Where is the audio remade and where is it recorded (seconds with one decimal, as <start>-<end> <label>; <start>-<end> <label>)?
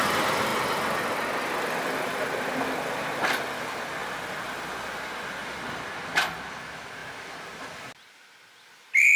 0.0-9.2 recorded